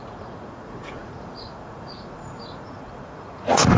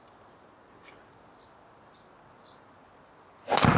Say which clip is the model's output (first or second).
first